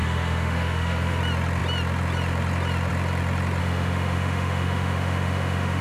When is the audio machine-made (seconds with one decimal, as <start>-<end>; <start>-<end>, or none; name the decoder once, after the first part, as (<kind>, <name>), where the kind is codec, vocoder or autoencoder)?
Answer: 0.0-1.2 (autoencoder, DAC-VAE); 3.6-5.8